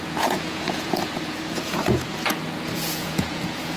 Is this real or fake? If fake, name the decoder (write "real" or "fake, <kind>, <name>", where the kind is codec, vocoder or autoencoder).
fake, vocoder, Vocos